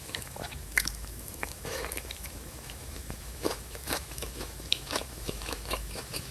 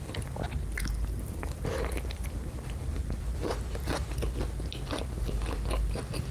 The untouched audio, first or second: second